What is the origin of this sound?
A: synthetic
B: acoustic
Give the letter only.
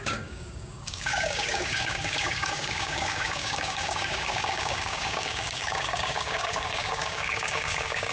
A